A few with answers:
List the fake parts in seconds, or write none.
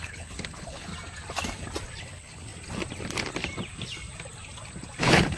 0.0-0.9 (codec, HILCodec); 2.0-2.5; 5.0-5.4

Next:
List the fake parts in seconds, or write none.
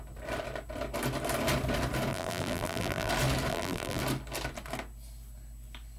2.1-3.1 (vocoder, BigVGAN v2); 3.5-4.0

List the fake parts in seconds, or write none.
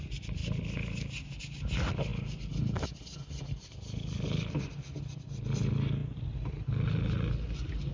none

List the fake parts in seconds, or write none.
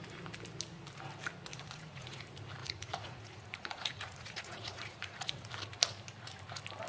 1.5-2.2 (vocoder, Vocos); 2.6-5.5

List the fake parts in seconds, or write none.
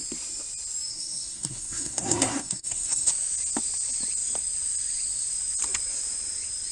0.9-3.1 (codec, SNAC)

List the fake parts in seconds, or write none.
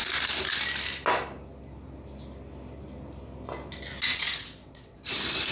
4.1-5.0 (vocoder, WaveNeXt)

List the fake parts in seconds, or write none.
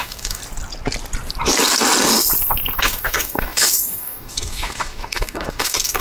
0.0-0.4 (codec, DAC); 2.8-6.0